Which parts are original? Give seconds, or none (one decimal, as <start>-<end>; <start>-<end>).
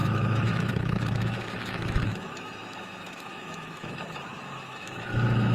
none